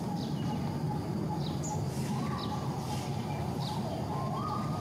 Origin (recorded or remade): recorded